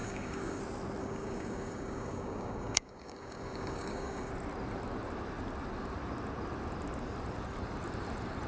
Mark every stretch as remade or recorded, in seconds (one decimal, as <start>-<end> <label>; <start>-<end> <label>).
0.0-0.6 remade; 0.6-1.0 recorded; 1.0-4.3 remade; 4.3-8.5 recorded